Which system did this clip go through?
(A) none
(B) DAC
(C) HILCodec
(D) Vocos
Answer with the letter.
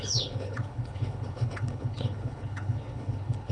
C